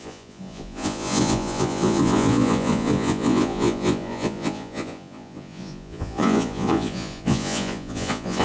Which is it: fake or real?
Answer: fake